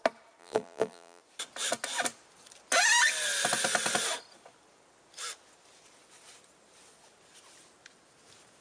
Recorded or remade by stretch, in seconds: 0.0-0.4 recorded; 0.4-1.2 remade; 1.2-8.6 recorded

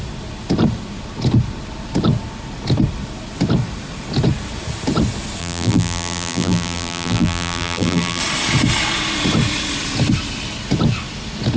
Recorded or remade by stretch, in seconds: 0.0-5.4 recorded; 5.4-8.2 remade; 8.2-11.6 recorded

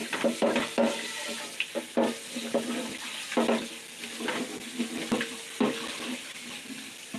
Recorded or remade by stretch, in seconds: 0.0-0.6 remade; 0.6-7.2 recorded